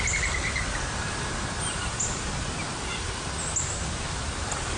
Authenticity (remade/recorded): recorded